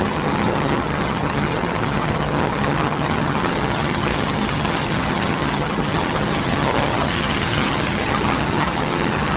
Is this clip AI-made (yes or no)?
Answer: yes